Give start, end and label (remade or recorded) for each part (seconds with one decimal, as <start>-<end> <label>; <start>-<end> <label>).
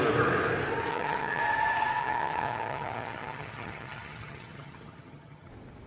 0.0-0.9 recorded; 0.9-1.4 remade; 1.4-2.0 recorded; 2.0-5.5 remade; 5.5-5.9 recorded